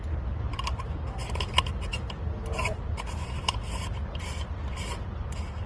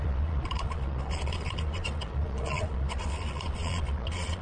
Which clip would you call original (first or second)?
first